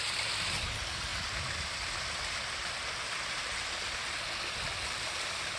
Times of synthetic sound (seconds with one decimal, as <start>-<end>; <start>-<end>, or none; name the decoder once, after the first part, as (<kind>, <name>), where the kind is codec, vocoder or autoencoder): none